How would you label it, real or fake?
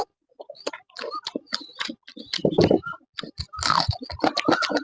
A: real